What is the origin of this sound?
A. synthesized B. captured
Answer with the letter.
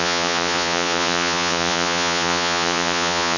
A